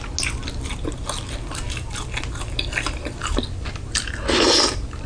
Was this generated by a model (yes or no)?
no